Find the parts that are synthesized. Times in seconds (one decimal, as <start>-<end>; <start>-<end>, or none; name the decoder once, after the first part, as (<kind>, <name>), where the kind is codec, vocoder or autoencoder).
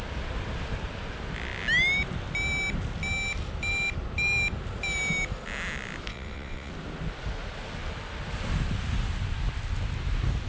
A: 6.1-6.7 (vocoder, WaveNeXt)